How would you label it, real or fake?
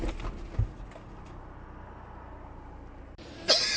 real